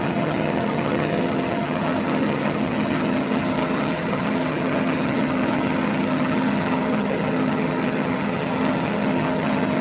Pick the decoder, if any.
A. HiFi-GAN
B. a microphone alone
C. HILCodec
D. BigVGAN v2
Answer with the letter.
A